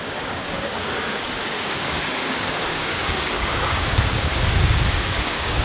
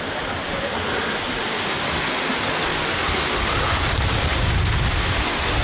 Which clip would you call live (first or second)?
second